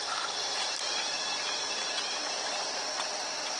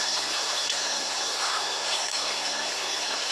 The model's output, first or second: second